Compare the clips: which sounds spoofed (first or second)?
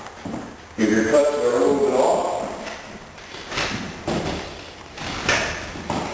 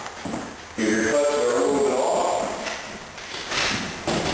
first